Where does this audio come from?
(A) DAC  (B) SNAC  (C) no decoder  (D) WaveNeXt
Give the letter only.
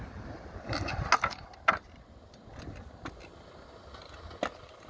C